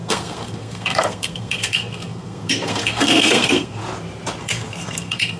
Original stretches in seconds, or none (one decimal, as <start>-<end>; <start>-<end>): 3.8-4.4